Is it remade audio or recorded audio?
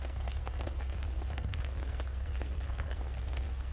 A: remade